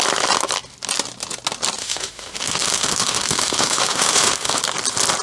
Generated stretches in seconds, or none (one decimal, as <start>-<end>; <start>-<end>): 1.8-4.6